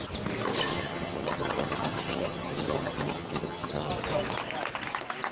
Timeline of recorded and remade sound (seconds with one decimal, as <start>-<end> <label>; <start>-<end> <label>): 0.0-0.7 recorded; 0.7-3.9 remade; 3.9-5.3 recorded